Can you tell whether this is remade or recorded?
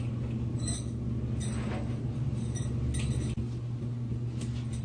recorded